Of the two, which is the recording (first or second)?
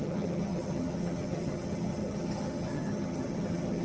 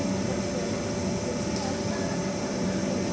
second